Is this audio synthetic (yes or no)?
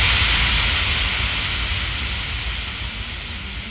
no